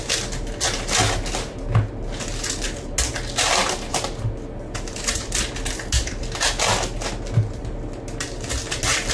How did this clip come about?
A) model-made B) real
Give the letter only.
B